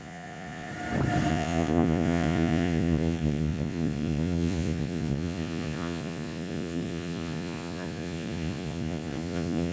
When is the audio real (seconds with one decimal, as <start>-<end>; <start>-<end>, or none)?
0.7-1.3